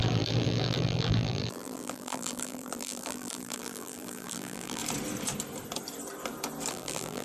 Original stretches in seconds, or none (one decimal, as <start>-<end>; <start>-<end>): 4.8-6.7